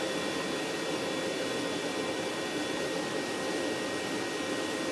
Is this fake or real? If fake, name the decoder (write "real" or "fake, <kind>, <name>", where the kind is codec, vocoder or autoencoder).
real